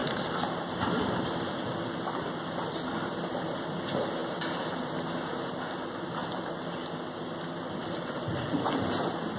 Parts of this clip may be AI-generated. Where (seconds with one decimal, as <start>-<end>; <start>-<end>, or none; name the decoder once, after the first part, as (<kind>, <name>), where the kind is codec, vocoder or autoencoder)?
0.0-1.3 (vocoder, BigVGAN v2); 6.2-6.7; 7.8-9.0